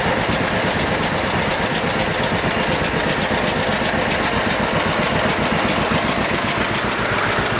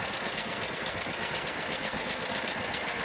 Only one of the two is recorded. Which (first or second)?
first